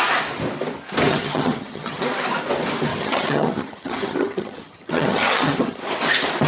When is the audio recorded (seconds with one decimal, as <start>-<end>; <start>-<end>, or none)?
0.0-1.1; 2.0-2.9; 5.8-6.5